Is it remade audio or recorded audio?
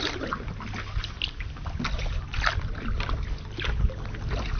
recorded